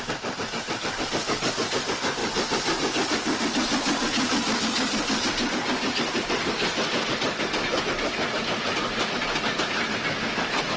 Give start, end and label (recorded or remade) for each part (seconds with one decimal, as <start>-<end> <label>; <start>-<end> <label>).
0.0-10.8 recorded